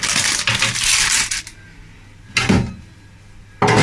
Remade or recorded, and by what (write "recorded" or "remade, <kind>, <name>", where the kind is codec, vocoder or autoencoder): recorded